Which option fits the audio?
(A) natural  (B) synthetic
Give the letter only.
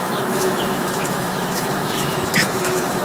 B